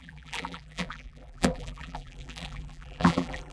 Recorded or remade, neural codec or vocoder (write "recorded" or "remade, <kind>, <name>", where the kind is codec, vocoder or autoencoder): remade, vocoder, BigVGAN v2